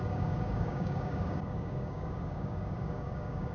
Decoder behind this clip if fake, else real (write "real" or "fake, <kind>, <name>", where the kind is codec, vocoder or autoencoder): fake, codec, DAC